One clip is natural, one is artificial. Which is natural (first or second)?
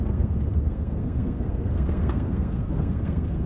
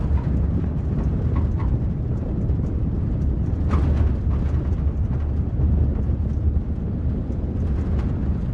second